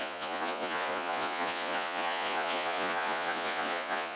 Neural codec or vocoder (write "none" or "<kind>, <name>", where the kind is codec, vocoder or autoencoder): vocoder, Vocos